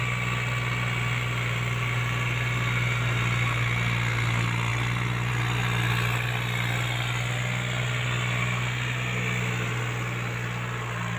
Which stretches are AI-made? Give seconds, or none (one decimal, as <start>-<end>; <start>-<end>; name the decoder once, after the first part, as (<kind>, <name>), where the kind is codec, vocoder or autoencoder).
none